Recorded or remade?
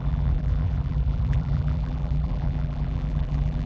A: remade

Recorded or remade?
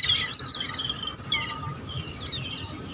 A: recorded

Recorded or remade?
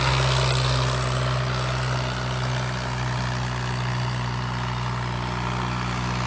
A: recorded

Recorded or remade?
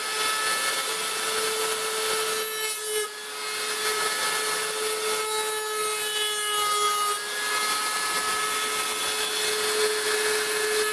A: recorded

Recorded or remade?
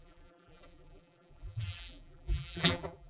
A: remade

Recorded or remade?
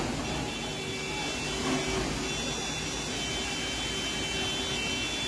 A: recorded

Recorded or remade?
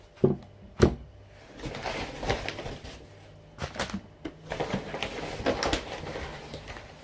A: recorded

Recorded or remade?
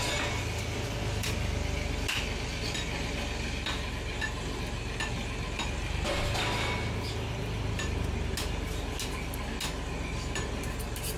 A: recorded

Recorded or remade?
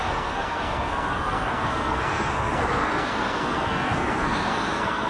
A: remade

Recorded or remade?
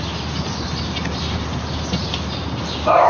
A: recorded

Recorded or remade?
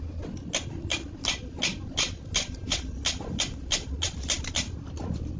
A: recorded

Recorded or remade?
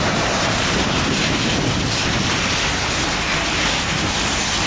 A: recorded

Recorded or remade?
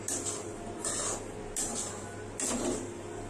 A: recorded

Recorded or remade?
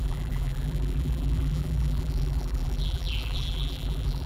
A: remade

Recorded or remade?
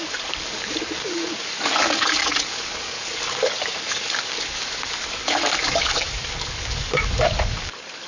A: remade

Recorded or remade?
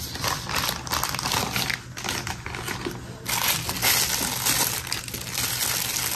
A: recorded